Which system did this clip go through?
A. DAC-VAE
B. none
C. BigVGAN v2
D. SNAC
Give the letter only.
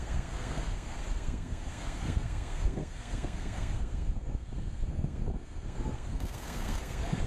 D